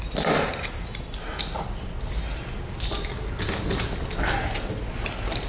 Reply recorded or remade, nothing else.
recorded